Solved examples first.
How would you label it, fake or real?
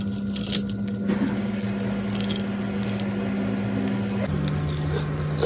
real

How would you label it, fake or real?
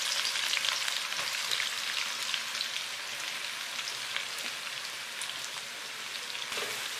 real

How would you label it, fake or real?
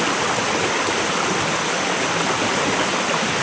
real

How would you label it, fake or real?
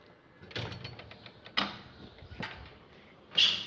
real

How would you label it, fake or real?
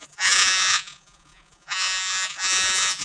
fake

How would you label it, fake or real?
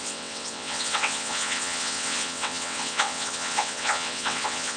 fake